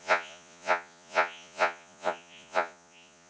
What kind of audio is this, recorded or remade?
remade